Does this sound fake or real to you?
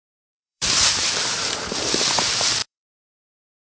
fake